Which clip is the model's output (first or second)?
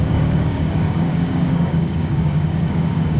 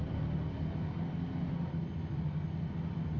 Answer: first